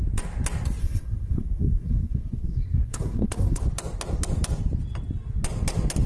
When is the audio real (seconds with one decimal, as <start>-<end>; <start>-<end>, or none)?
0.0-0.8; 3.6-6.1